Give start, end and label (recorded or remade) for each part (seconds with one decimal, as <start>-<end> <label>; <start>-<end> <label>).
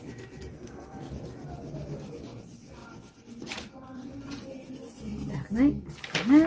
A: 0.0-0.5 recorded; 0.5-1.1 remade; 1.1-6.5 recorded